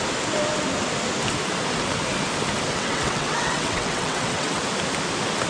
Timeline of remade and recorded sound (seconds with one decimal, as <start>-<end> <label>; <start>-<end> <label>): 0.0-2.7 recorded; 2.7-4.6 remade; 4.6-5.5 recorded